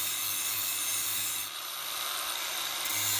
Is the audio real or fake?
fake